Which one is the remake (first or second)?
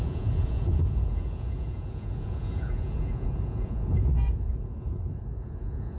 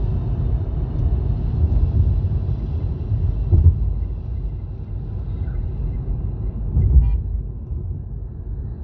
first